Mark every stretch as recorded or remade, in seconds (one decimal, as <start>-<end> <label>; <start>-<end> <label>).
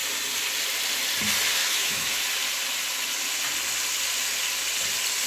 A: 0.0-1.6 recorded; 1.6-2.2 remade; 2.2-5.3 recorded